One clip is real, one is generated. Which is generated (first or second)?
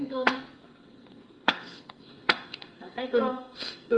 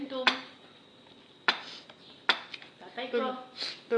first